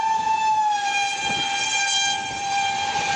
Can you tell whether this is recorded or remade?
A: remade